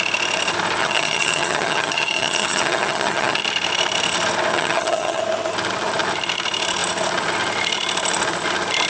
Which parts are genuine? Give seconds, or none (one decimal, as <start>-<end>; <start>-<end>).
0.0-0.8; 3.4-4.5; 5.2-8.9